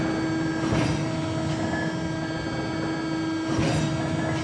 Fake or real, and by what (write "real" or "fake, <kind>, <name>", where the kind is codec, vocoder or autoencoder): real